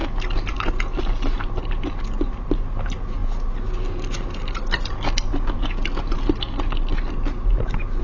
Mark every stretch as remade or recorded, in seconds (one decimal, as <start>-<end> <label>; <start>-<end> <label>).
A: 0.0-8.0 recorded